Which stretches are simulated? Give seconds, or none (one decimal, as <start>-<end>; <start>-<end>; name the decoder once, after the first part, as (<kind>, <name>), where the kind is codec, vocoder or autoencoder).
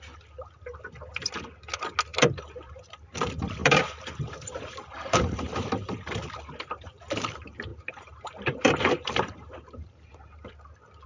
2.1-2.8 (vocoder, BigVGAN v2); 3.6-6.9; 7.7-10.5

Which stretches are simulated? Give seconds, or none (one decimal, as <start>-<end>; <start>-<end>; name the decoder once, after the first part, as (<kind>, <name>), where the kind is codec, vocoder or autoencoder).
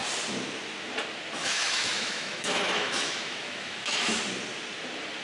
1.4-4.2 (autoencoder, DAC-VAE)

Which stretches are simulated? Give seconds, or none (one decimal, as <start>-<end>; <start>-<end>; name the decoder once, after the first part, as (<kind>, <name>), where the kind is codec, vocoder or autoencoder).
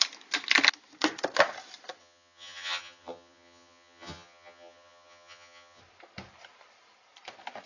2.0-5.8 (vocoder, HiFi-GAN)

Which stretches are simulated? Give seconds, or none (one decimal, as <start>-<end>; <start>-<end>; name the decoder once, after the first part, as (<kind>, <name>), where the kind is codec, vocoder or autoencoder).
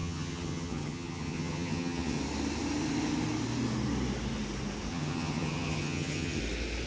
0.0-2.2 (vocoder, HiFi-GAN); 4.9-6.4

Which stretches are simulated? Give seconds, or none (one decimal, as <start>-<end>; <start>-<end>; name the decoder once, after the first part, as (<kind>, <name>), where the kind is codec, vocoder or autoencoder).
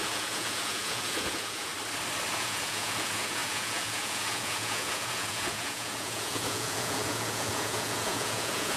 0.0-1.7 (vocoder, Vocos); 2.3-8.8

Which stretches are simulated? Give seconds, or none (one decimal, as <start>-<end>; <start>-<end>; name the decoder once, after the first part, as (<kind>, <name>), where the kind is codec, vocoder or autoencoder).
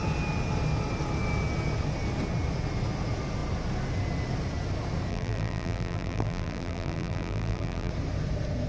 5.1-7.9 (vocoder, BigVGAN v2)